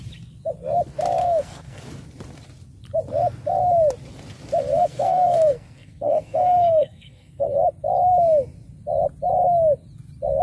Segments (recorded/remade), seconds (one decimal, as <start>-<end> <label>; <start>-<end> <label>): 0.0-1.2 recorded; 1.2-1.8 remade; 1.8-4.7 recorded; 4.7-7.6 remade; 7.6-10.4 recorded